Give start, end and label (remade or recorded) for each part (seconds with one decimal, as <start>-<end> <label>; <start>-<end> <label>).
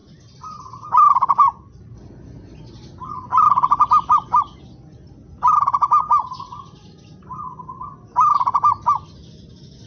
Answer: 0.0-9.9 recorded